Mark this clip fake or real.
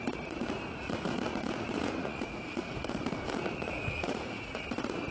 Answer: fake